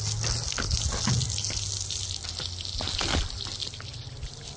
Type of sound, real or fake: real